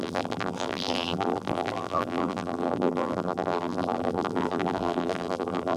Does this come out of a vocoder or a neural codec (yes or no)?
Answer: yes